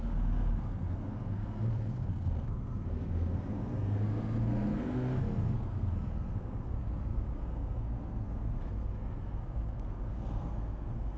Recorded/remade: remade